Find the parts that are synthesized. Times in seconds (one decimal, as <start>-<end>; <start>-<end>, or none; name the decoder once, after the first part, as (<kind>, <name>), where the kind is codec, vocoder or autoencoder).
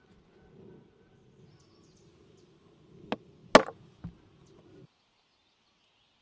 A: none